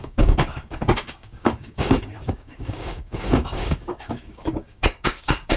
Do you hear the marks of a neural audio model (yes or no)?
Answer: yes